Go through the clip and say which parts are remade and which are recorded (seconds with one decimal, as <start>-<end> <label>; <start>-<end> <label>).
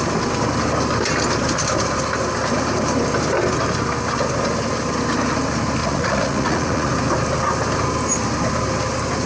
0.0-5.8 recorded; 5.8-6.9 remade; 6.9-9.3 recorded